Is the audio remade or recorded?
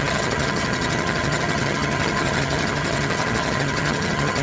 remade